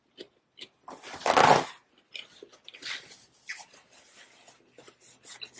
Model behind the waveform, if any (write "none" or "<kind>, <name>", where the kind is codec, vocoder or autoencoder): none